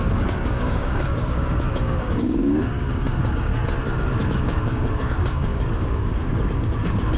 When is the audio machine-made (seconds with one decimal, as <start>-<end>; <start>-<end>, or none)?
0.0-3.5; 4.2-7.2